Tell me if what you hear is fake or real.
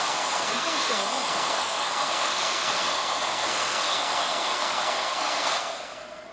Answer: fake